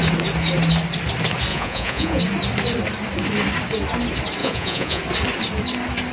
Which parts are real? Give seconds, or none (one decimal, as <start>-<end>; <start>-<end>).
0.0-1.5; 2.2-4.4; 5.0-6.1